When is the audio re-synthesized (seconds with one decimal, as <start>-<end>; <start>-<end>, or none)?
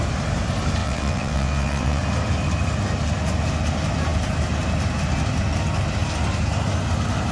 0.8-2.0